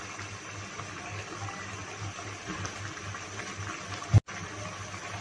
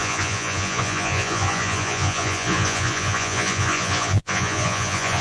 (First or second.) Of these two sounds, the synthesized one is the second